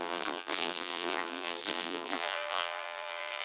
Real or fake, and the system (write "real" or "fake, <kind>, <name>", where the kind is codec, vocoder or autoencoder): fake, vocoder, BigVGAN v2